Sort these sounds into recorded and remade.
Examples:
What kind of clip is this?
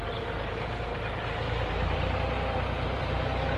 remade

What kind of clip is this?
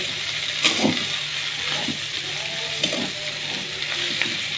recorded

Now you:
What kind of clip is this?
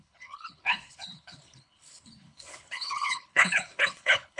remade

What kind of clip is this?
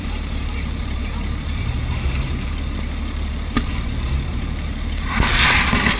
remade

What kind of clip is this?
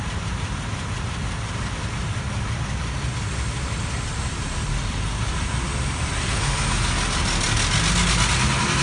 recorded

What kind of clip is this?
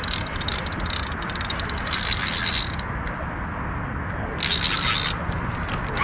recorded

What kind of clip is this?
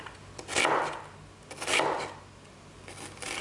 recorded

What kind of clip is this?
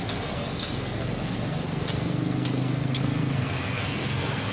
remade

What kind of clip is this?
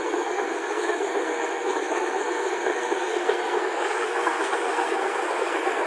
remade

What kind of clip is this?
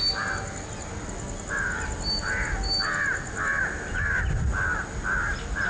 recorded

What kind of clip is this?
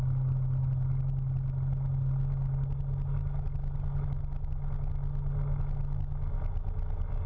recorded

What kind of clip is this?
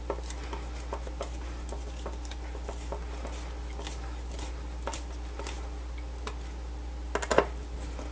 recorded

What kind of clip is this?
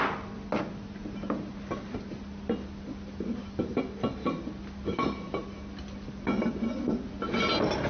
recorded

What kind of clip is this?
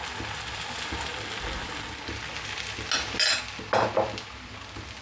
recorded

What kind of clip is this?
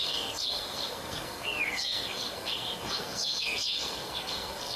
remade